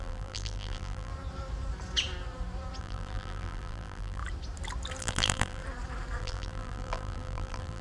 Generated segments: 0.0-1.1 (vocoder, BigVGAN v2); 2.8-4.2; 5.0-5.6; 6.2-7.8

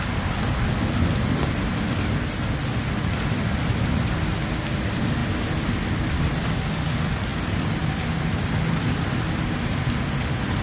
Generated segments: 7.3-9.9 (vocoder, BigVGAN v2)

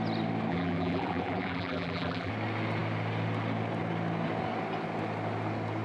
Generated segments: 0.5-2.3 (vocoder, BigVGAN v2)

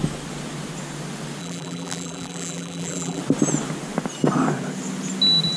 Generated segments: 1.4-3.2 (vocoder, BigVGAN v2)